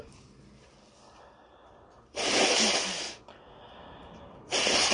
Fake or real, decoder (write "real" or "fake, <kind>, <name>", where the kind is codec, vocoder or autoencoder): real